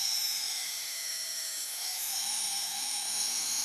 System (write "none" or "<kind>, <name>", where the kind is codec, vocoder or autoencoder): autoencoder, DAC-VAE